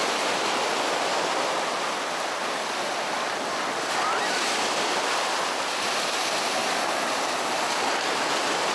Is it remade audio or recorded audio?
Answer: recorded